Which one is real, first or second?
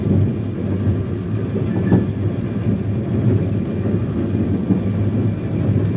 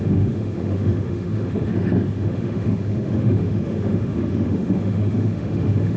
first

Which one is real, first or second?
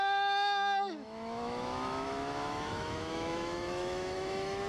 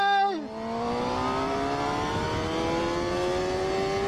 second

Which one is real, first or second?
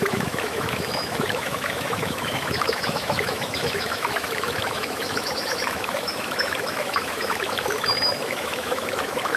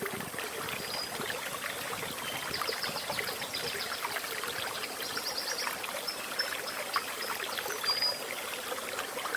second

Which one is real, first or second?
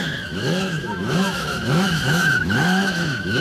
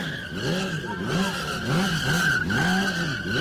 second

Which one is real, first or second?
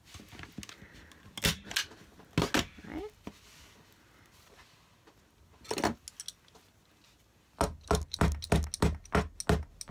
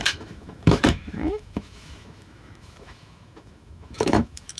first